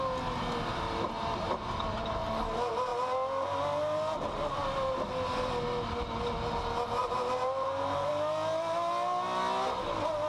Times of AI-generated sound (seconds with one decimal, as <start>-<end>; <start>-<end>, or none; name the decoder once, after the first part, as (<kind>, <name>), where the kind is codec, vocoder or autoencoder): 0.7-2.2 (vocoder, BigVGAN v2); 7.0-8.1